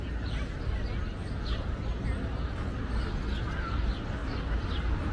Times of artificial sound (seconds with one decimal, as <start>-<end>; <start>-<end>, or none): none